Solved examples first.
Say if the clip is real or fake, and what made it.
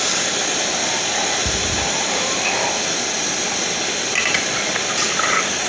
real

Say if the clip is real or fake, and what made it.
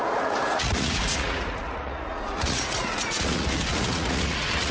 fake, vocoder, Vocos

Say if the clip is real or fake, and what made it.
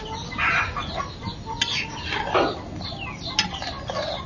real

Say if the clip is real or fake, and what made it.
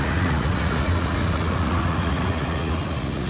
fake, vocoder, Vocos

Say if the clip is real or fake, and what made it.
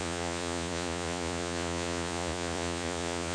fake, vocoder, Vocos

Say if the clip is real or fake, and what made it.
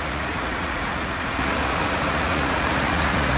fake, vocoder, Vocos